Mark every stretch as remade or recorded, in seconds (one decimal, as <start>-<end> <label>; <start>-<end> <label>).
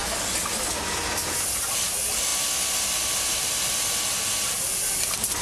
0.0-5.4 recorded